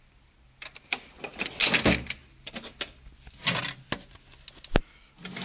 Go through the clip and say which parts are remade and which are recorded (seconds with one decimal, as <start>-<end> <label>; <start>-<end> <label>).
0.0-5.4 recorded